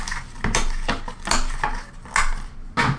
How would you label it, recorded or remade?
recorded